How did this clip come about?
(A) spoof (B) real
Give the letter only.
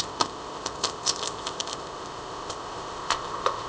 A